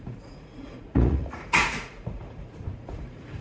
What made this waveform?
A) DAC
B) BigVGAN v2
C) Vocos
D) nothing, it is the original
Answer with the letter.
C